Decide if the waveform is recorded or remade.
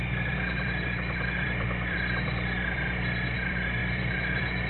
remade